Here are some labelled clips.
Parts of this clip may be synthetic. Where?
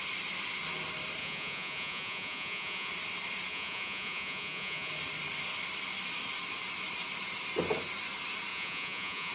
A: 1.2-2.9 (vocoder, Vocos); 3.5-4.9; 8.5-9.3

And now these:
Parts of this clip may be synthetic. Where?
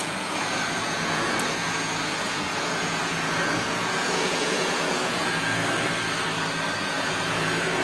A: 0.0-5.6 (vocoder, Vocos); 6.8-7.8